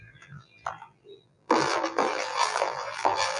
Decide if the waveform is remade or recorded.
remade